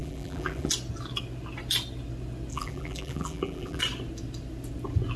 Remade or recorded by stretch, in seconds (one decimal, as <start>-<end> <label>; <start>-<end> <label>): 0.0-0.7 remade; 0.7-2.5 recorded; 2.5-3.8 remade; 3.8-5.2 recorded